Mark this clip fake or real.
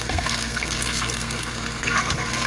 fake